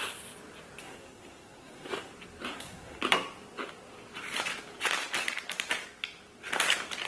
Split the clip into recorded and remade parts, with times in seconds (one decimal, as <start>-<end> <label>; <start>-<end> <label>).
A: 0.0-0.8 recorded; 0.8-2.1 remade; 2.1-2.5 recorded; 2.5-3.0 remade; 3.0-7.1 recorded